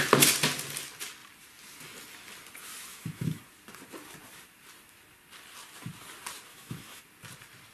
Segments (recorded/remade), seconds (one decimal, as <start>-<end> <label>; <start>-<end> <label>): 0.0-2.9 recorded; 2.9-3.4 remade; 3.4-6.5 recorded; 6.5-7.0 remade; 7.0-7.7 recorded